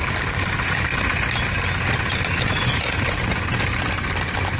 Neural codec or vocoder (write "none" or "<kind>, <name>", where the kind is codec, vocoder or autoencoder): none